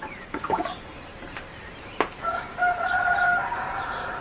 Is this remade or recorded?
remade